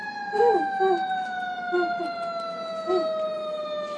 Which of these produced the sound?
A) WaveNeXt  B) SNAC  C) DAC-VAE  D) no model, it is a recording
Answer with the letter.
D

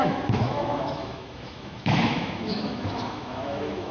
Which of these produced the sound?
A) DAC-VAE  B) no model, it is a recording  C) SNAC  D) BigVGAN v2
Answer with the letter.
A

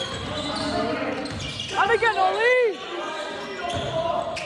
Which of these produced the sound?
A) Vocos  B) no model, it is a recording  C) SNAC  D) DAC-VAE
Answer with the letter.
B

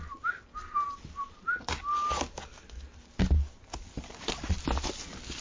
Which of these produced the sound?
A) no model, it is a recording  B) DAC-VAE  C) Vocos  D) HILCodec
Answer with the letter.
A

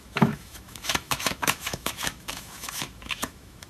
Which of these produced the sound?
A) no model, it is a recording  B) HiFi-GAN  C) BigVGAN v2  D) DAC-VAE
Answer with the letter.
D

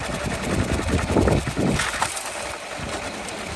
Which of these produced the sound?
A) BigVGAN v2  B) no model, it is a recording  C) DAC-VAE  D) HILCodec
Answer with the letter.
B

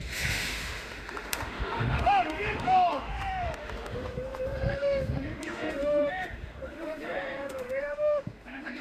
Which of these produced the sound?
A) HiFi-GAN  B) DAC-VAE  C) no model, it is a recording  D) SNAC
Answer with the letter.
B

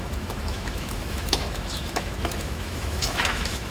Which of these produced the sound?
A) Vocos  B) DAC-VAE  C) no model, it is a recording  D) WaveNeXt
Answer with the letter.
B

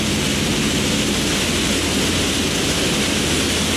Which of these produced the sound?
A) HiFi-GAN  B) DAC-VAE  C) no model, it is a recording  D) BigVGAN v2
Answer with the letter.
C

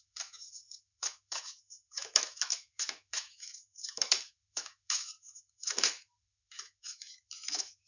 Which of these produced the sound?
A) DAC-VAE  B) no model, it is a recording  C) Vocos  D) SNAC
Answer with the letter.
A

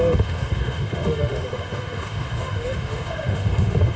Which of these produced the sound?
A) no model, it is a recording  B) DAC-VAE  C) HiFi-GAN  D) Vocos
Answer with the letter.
B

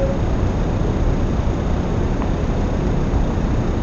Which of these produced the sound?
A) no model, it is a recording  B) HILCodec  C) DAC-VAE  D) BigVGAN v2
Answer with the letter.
A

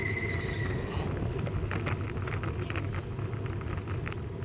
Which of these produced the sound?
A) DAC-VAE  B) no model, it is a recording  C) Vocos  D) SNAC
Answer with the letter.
B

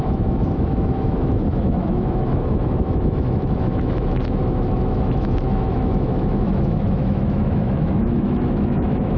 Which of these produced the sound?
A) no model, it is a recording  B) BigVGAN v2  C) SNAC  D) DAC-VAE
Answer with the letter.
D